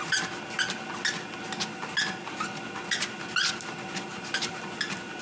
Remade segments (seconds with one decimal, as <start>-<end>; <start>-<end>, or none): 4.1-4.7